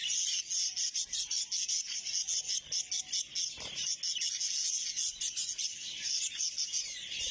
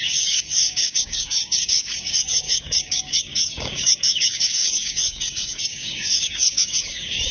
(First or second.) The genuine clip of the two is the first